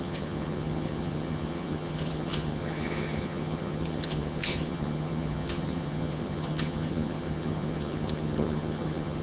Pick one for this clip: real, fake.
fake